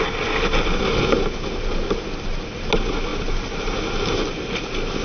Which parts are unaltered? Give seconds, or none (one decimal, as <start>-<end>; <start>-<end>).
0.0-5.0